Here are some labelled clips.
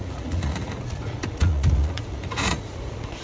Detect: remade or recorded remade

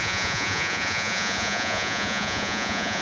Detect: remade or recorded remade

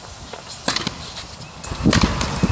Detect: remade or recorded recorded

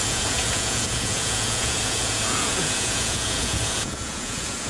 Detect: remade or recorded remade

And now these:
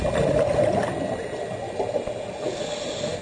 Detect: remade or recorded recorded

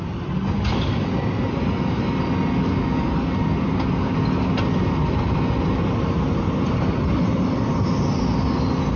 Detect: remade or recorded recorded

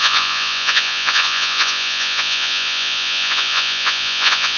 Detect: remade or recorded remade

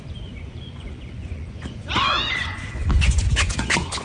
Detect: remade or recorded remade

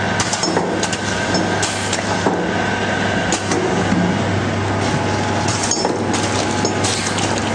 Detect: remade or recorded recorded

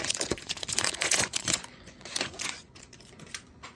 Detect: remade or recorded remade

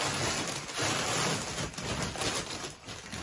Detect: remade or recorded recorded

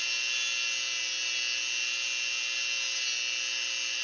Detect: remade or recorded recorded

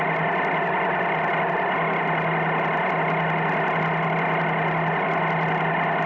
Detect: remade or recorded recorded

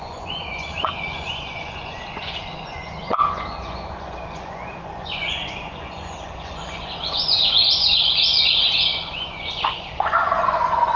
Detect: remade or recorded remade